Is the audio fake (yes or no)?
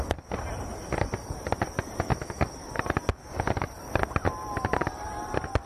no